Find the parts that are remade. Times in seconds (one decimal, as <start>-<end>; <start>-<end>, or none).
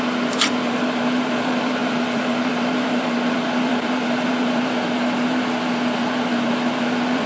0.0-7.3